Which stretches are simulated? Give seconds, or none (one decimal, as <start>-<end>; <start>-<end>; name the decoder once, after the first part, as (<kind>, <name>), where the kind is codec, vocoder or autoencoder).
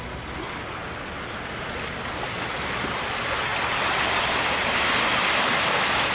none